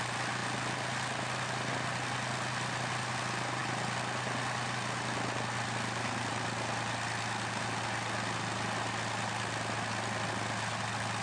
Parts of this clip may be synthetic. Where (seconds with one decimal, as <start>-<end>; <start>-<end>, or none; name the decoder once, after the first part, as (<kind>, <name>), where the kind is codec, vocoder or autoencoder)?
none